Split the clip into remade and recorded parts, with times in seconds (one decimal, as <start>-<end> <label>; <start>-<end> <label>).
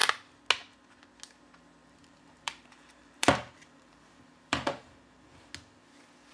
0.0-1.8 recorded; 1.8-5.5 remade; 5.5-6.3 recorded